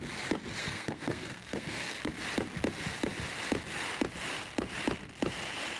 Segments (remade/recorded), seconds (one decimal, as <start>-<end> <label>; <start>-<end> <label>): 0.0-0.6 recorded; 0.6-2.1 remade; 2.1-5.8 recorded